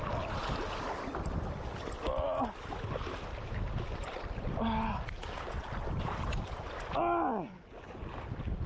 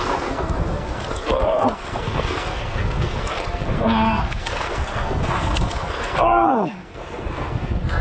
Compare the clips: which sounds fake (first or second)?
second